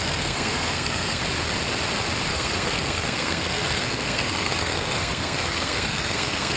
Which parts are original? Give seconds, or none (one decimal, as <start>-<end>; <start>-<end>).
1.2-2.3